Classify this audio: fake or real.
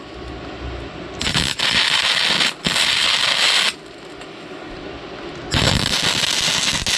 real